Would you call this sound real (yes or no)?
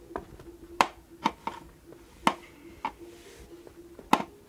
yes